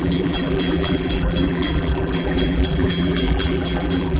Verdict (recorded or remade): remade